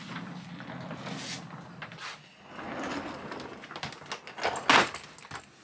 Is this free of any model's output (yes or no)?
yes